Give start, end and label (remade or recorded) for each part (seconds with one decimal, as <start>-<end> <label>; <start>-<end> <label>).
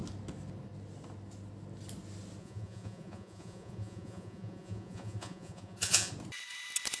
0.0-2.4 recorded; 2.4-6.1 remade; 6.1-7.0 recorded